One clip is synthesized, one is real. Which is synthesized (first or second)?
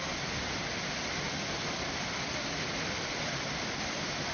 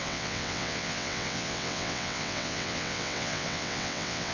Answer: second